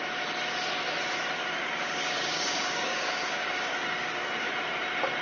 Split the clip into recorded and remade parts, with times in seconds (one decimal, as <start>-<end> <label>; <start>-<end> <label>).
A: 0.0-1.4 recorded; 1.4-4.5 remade; 4.5-5.2 recorded